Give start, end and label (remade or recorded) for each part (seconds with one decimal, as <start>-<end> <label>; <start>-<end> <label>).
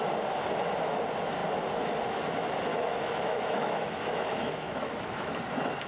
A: 0.0-2.7 recorded; 2.7-5.4 remade; 5.4-5.9 recorded